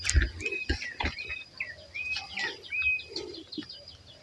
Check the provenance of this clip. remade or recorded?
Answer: recorded